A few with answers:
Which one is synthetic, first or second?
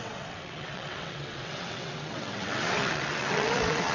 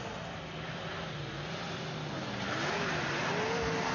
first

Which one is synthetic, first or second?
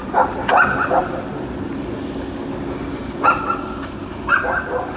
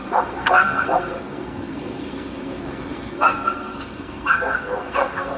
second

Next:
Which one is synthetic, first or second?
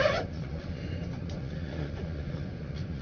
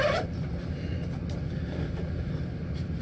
first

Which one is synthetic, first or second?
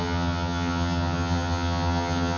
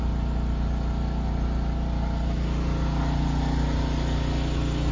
first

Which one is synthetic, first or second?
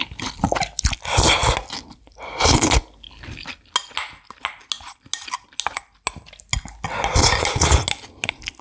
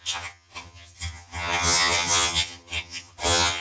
second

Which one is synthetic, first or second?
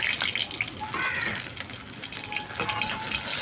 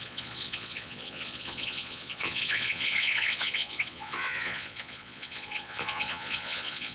second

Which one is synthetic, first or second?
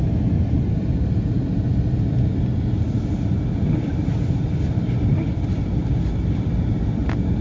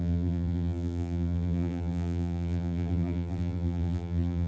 second